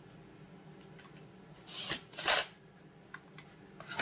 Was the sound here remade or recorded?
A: recorded